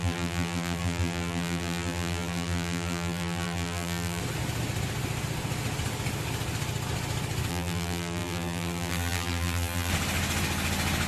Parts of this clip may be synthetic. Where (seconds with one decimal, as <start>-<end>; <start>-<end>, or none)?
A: 0.0-4.2; 7.5-9.9